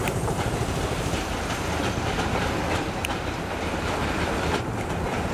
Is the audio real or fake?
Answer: fake